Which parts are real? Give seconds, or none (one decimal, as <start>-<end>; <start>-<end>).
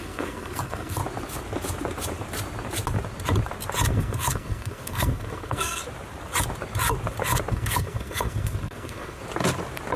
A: 1.0-3.9; 5.8-7.5; 9.2-10.0